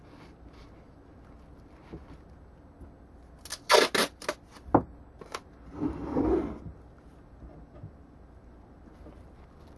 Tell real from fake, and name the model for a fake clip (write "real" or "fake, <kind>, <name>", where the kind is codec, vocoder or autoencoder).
real